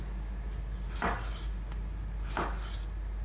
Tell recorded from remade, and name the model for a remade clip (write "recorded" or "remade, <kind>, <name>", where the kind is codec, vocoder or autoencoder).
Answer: recorded